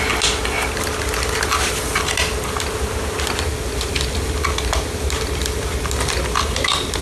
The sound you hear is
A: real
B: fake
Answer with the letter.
A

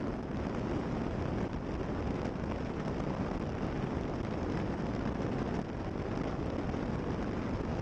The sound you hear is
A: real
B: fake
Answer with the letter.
A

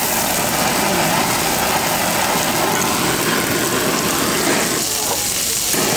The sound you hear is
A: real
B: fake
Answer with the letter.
A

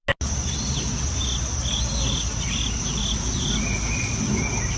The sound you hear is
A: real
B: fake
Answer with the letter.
A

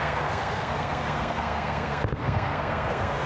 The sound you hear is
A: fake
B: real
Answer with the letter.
A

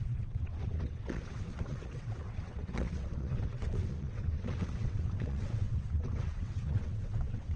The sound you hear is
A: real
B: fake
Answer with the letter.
B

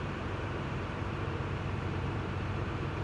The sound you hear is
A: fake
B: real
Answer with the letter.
A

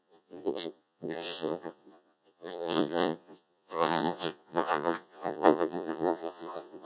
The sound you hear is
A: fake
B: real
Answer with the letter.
A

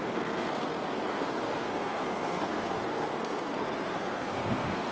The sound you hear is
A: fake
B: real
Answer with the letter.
A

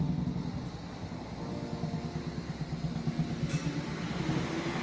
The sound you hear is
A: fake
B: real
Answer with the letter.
B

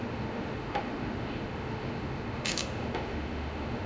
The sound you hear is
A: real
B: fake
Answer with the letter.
B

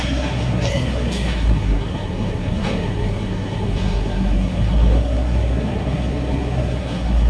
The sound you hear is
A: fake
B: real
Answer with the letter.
A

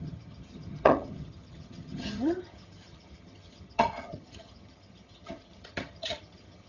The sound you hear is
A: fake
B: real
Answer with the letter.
A